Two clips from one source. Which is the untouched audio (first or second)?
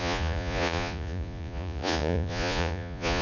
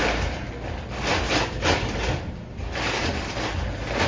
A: second